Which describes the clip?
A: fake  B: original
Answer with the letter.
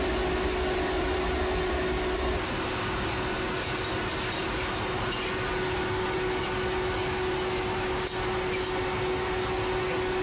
B